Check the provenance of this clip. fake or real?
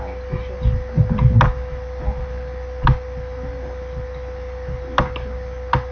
real